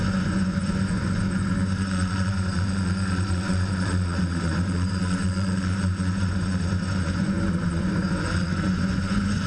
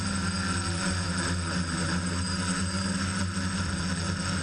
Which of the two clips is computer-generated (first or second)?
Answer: first